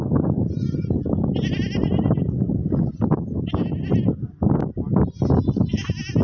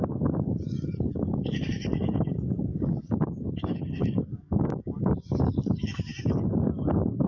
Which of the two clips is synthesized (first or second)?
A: second